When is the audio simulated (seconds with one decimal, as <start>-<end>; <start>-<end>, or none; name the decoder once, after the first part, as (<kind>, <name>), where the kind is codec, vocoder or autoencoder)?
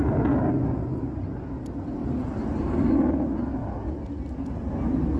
2.0-2.9 (vocoder, BigVGAN v2)